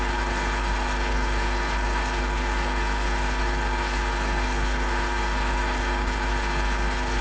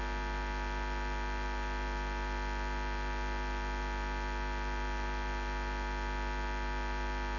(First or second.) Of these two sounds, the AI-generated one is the first